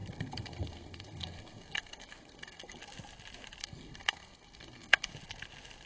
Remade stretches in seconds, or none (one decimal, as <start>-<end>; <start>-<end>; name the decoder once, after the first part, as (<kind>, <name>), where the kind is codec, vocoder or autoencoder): 0.0-2.8 (codec, SNAC); 3.6-5.1